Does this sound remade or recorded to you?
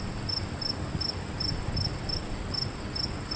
recorded